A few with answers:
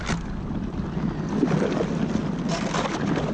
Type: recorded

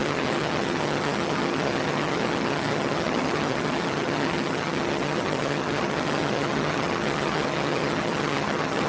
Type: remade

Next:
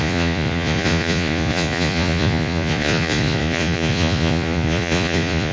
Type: remade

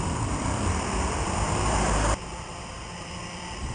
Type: remade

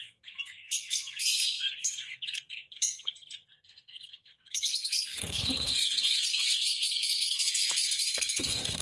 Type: remade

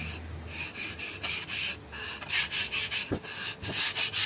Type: recorded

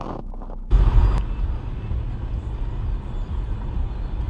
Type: recorded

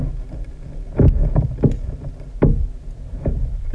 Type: recorded